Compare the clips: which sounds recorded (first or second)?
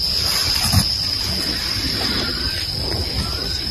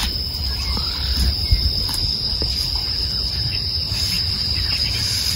second